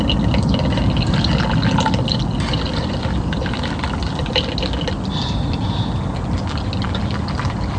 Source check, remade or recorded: recorded